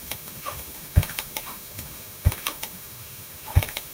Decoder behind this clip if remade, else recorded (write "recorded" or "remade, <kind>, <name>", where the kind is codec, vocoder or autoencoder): remade, autoencoder, DAC-VAE